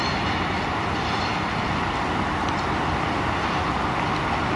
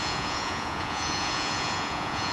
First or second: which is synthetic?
second